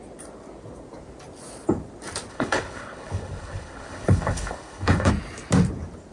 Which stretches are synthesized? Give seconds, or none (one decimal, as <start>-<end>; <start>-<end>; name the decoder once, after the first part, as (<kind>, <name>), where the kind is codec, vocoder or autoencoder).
2.3-5.1 (codec, HILCodec)